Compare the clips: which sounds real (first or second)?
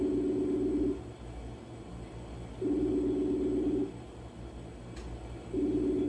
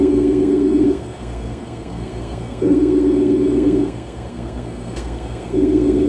first